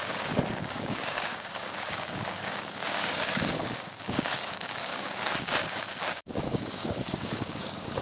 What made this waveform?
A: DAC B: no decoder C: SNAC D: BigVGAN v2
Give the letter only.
A